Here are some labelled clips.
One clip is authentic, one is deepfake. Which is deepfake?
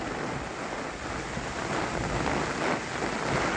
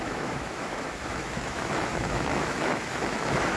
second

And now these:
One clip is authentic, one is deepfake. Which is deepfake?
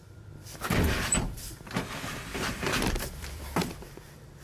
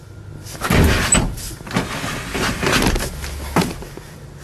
first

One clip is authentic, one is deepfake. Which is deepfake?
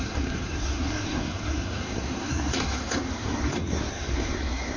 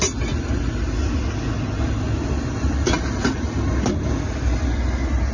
first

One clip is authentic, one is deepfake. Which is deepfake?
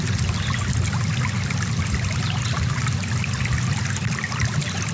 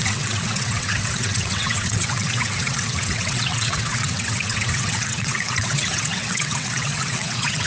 second